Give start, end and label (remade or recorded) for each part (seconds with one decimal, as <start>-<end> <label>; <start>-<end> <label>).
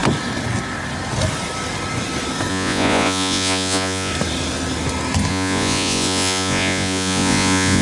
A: 0.0-2.5 recorded; 2.5-4.1 remade; 4.1-5.3 recorded; 5.3-7.8 remade